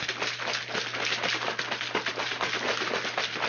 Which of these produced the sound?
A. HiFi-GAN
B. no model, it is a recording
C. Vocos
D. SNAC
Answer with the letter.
B